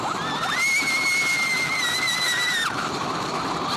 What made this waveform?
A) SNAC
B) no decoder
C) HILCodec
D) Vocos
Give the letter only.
B